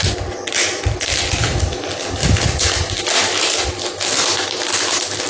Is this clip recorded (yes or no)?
yes